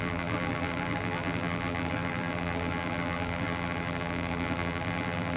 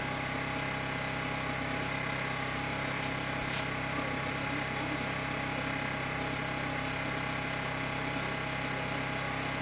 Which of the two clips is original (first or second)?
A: second